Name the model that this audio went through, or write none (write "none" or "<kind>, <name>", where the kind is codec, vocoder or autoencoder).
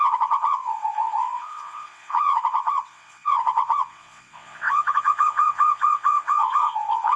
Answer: vocoder, WaveNeXt